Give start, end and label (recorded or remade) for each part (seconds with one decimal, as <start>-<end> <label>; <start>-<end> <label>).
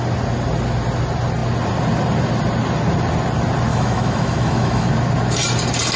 0.0-3.7 recorded; 3.7-4.9 remade; 4.9-6.0 recorded